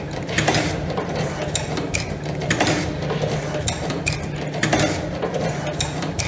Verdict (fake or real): real